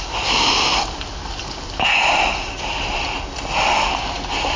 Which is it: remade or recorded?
recorded